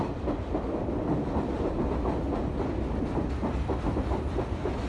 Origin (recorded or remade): recorded